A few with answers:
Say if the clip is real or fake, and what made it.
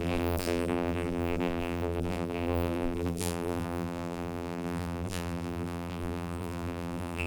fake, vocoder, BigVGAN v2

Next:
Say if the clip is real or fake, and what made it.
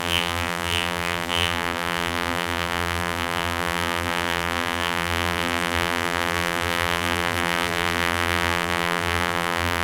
fake, vocoder, BigVGAN v2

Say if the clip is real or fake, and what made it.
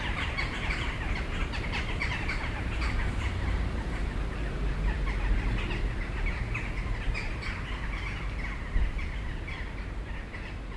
real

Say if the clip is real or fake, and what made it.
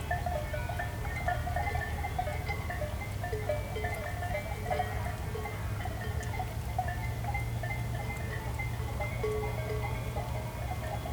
real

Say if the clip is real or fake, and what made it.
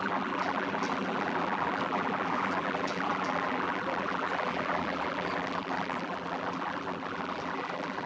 fake, vocoder, BigVGAN v2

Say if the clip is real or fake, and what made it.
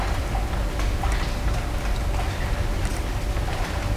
real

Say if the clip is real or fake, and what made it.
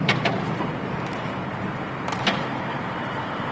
fake, vocoder, BigVGAN v2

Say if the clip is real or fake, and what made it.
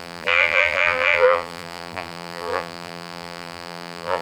fake, vocoder, BigVGAN v2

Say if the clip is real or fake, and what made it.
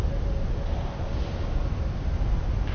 real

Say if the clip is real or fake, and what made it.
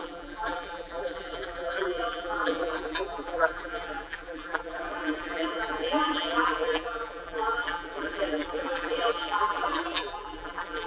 fake, vocoder, BigVGAN v2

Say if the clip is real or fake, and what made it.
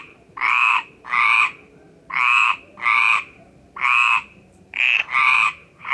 fake, vocoder, BigVGAN v2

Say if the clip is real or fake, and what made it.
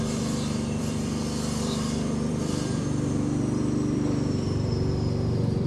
fake, vocoder, BigVGAN v2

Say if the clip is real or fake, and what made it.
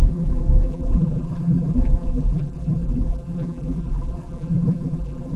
fake, vocoder, BigVGAN v2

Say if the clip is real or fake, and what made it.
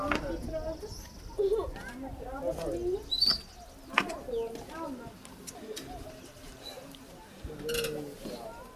real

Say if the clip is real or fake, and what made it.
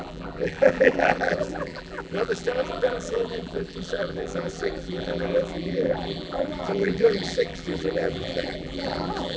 fake, vocoder, BigVGAN v2